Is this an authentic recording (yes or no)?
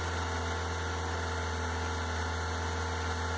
yes